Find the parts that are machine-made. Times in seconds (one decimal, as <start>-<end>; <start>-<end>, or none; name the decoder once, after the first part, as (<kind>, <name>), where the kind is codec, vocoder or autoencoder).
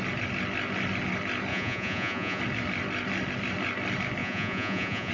1.5-2.4 (vocoder, Vocos); 4.2-5.1